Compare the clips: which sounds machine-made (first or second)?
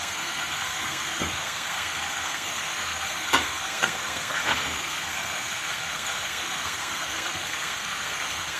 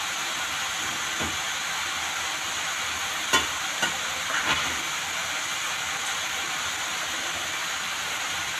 first